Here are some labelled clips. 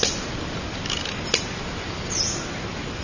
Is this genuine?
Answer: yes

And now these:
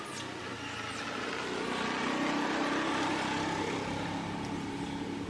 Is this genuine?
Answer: yes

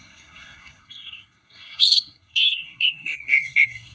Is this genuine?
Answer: no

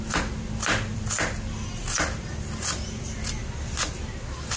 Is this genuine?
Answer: yes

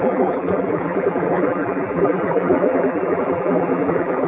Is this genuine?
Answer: no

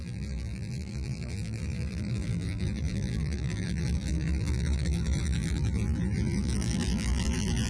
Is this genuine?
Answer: no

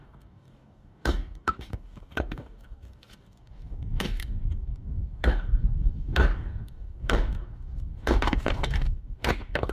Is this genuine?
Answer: no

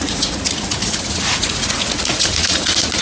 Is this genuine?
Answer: no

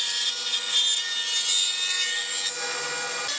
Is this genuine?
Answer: yes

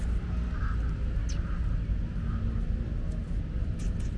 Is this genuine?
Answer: yes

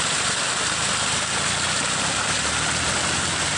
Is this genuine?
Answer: yes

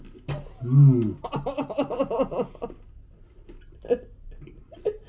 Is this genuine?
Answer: yes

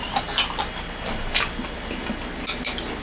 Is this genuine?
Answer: yes